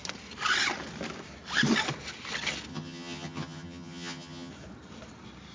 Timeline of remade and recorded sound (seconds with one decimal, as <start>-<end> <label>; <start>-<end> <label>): 0.0-2.7 recorded; 2.7-4.5 remade; 4.5-5.5 recorded